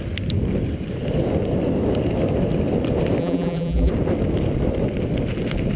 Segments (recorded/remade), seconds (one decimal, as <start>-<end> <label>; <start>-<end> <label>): 0.0-3.2 recorded; 3.2-3.9 remade; 3.9-5.8 recorded